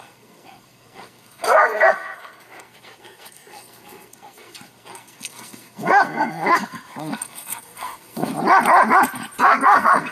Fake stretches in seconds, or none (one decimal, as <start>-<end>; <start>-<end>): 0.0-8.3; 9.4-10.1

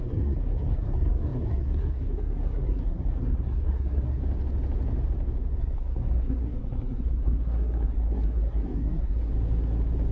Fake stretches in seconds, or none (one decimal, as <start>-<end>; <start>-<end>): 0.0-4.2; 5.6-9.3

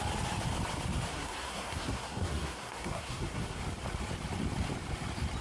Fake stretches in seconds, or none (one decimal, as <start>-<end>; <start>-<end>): 1.1-3.6

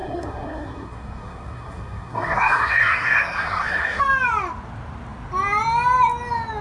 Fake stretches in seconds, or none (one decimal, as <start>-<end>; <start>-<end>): 0.0-4.0

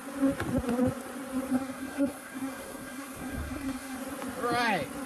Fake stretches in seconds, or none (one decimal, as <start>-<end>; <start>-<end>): 1.5-4.0

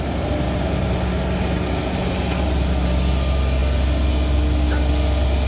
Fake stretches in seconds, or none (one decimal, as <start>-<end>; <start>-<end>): none